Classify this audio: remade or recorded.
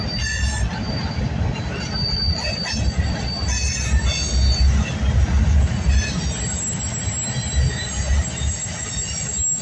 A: recorded